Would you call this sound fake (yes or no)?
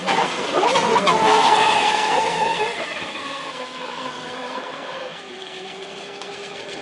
yes